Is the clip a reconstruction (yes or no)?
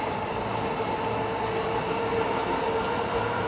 no